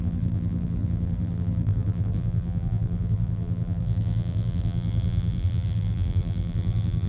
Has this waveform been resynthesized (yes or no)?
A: yes